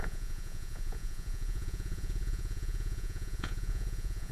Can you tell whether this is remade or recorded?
remade